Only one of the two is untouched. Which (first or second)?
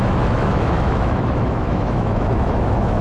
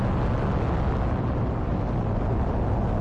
second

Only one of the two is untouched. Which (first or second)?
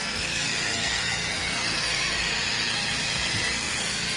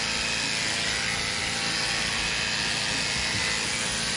second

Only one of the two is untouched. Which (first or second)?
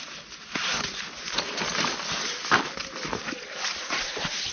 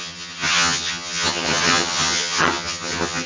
first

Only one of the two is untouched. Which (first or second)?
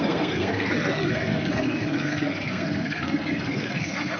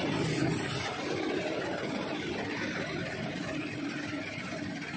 second